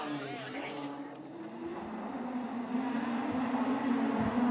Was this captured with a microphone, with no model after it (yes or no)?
yes